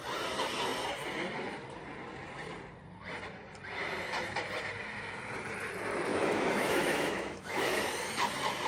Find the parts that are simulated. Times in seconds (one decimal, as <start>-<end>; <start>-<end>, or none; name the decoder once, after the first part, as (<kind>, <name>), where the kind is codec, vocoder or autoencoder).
6.1-7.8 (autoencoder, DAC-VAE)